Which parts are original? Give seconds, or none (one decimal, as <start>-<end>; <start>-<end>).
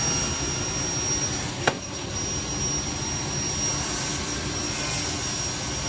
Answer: 0.0-1.5; 2.1-5.9